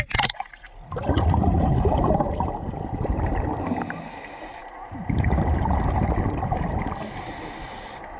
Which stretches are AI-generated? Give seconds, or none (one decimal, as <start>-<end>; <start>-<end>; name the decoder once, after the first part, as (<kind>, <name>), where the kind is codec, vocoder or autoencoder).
none

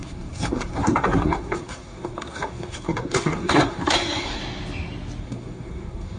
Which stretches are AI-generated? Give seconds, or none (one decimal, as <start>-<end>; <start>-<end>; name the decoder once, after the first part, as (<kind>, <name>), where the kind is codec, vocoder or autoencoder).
0.0-4.4 (codec, SNAC); 5.2-6.2